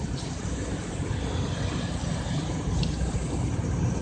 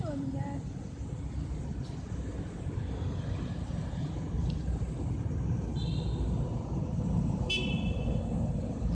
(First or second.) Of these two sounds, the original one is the second